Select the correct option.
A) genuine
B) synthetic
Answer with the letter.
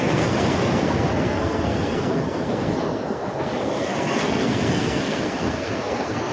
B